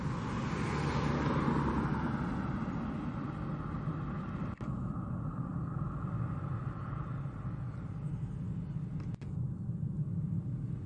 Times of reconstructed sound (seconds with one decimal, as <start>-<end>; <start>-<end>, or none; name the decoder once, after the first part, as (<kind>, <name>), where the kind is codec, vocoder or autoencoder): none